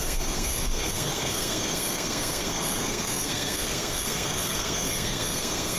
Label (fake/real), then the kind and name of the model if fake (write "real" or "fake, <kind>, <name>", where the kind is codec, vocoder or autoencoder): fake, codec, SNAC